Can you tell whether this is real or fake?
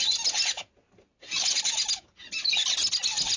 real